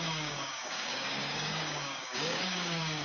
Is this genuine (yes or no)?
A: no